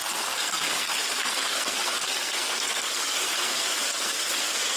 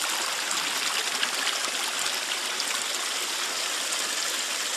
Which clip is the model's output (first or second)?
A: first